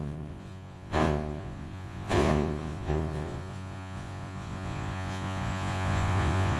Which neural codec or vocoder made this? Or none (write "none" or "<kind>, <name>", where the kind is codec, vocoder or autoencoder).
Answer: vocoder, Vocos